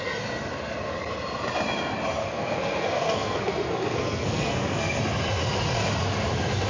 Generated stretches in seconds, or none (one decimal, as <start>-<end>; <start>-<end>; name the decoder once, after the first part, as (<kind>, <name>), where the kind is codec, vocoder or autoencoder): 2.2-5.0 (codec, SNAC)